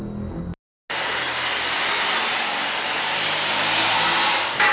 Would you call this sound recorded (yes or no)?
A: yes